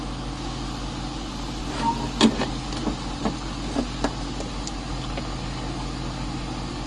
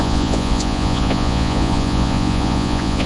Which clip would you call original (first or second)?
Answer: first